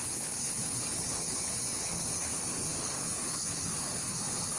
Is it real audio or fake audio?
fake